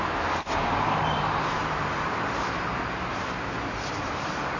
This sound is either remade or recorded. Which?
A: remade